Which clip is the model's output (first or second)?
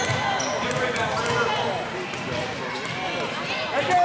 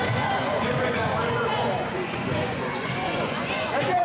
second